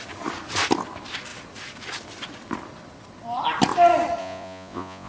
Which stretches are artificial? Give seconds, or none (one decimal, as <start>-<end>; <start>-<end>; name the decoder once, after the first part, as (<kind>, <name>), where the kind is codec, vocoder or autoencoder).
4.2-5.1 (vocoder, Vocos)